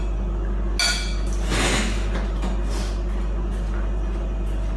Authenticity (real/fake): real